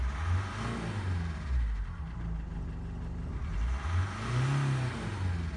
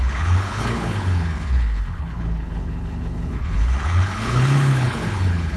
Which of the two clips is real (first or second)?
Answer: first